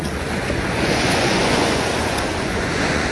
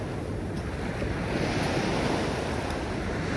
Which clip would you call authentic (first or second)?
second